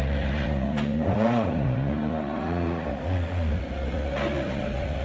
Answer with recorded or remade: remade